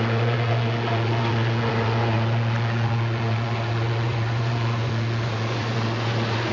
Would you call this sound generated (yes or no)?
yes